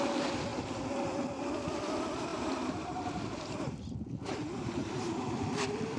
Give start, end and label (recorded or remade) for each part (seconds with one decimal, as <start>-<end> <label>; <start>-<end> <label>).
0.0-2.3 recorded; 2.3-4.2 remade; 4.2-4.8 recorded; 4.8-6.0 remade